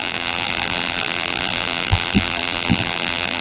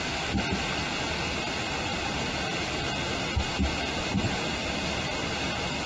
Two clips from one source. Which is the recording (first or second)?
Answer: second